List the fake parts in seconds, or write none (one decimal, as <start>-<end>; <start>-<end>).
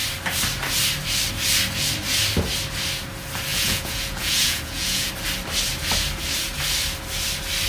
3.5-5.1